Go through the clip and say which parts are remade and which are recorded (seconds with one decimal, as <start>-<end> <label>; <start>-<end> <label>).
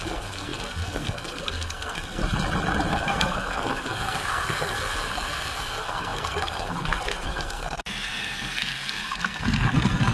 0.0-2.2 remade; 2.2-2.9 recorded; 2.9-10.1 remade